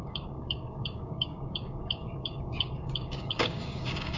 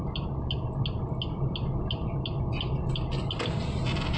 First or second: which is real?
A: second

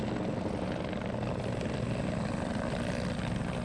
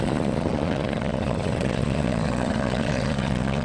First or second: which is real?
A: first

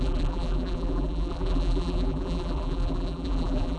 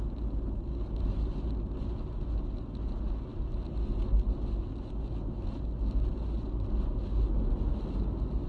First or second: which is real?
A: second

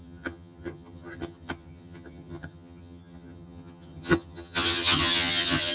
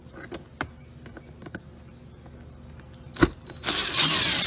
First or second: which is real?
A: second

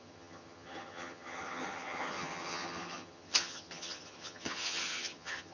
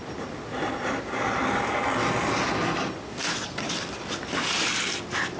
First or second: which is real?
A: second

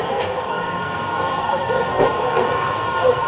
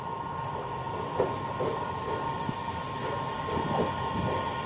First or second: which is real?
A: second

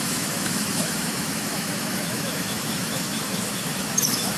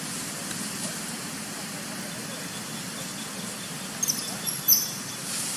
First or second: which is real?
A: second